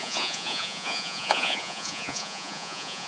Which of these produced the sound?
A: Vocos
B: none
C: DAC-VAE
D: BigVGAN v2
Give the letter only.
A